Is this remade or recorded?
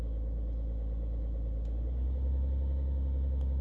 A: recorded